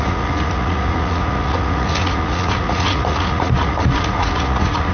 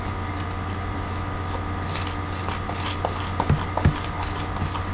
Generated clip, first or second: first